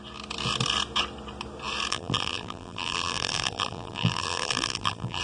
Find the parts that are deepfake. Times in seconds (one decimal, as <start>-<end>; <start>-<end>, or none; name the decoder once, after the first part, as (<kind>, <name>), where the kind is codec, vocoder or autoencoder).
1.9-5.2 (vocoder, BigVGAN v2)